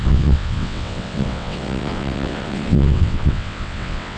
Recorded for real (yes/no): no